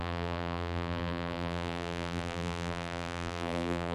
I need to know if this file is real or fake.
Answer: fake